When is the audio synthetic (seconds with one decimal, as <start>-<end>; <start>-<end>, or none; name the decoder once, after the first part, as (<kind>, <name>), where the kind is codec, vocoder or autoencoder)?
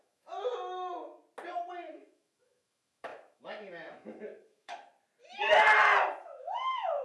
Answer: 0.0-0.5 (autoencoder, DAC-VAE); 1.9-4.9; 6.1-7.0